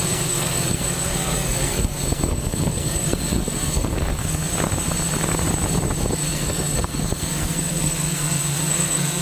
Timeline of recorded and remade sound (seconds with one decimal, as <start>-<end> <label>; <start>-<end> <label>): 0.0-4.5 remade; 4.5-6.3 recorded; 6.3-9.2 remade